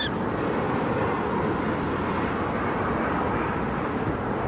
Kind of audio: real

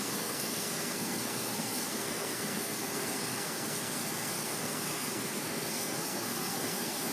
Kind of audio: fake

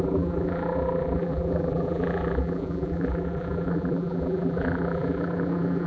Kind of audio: fake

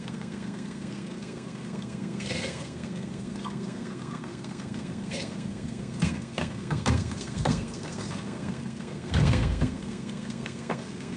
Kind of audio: fake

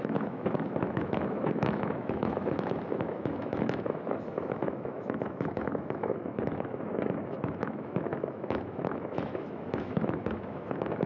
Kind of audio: fake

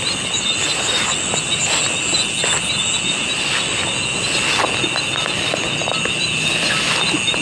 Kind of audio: real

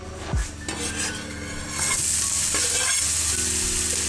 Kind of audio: real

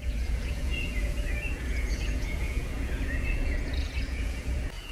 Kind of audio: fake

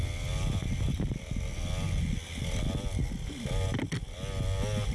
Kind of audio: real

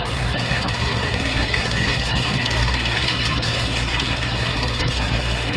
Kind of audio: fake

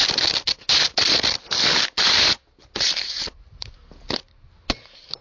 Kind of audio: real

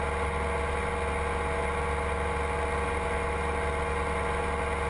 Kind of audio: real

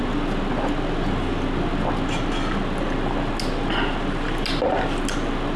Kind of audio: real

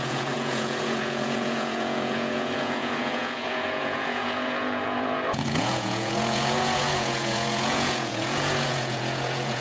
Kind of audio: fake